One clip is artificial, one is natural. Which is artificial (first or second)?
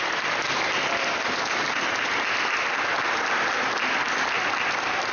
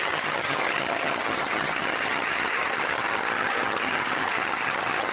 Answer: second